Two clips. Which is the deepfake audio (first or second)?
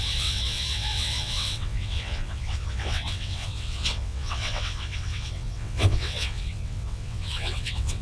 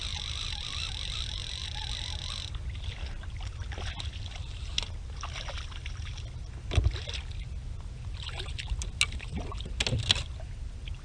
first